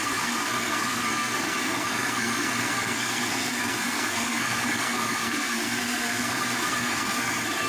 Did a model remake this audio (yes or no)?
yes